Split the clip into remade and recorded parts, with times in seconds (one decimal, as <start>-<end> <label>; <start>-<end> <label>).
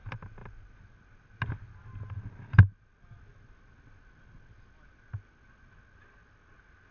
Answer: 0.0-6.9 recorded